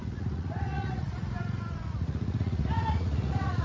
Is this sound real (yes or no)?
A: no